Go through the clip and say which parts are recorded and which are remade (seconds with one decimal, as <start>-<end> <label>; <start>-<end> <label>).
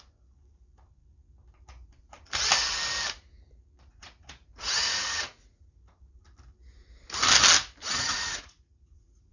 0.0-3.9 recorded; 3.9-5.8 remade; 5.8-7.8 recorded; 7.8-9.3 remade